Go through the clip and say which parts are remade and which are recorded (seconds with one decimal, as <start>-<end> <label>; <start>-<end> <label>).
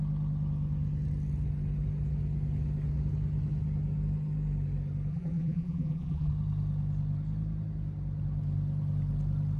0.0-5.1 recorded; 5.1-6.3 remade; 6.3-9.6 recorded